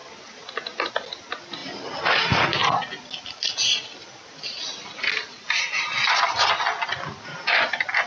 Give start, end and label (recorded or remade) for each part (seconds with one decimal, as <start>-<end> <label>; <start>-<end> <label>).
0.0-8.1 recorded

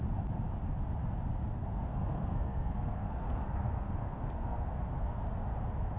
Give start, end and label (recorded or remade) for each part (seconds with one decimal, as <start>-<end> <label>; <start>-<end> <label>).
0.0-1.6 recorded; 1.6-5.2 remade; 5.2-6.0 recorded

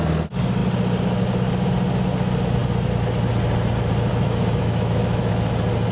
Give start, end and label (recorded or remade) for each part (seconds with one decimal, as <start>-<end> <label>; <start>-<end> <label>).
0.0-4.1 recorded; 4.1-5.3 remade; 5.3-5.9 recorded

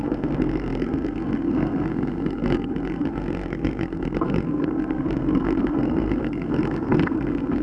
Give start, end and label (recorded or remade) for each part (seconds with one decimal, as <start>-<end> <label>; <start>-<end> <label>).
0.0-7.6 remade

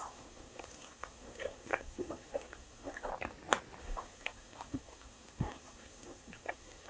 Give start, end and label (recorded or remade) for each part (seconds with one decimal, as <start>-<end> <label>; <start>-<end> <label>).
0.0-3.1 remade; 3.1-3.8 recorded; 3.8-6.9 remade